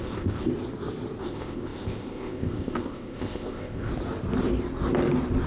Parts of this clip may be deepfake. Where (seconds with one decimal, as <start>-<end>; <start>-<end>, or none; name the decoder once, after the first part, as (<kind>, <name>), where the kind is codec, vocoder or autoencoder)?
0.0-0.5 (codec, ZipCodec); 1.2-3.9